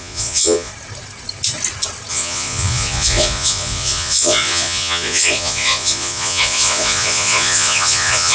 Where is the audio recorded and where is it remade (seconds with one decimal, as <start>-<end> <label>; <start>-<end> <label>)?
0.0-0.7 remade; 0.7-2.1 recorded; 2.1-8.3 remade